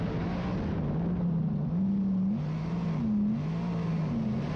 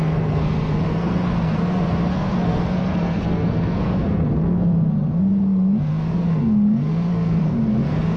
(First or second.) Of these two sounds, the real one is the first